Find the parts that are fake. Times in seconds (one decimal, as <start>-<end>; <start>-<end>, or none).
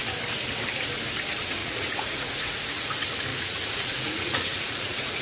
1.6-2.9; 3.3-5.2